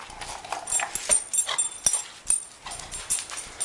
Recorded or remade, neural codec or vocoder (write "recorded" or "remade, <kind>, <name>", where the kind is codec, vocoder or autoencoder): recorded